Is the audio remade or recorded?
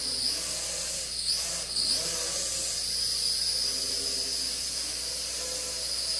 recorded